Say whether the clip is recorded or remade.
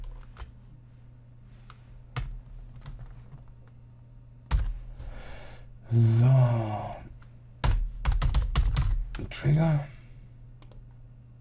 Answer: recorded